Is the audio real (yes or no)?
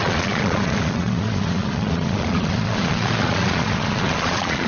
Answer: no